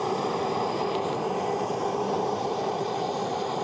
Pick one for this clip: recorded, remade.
recorded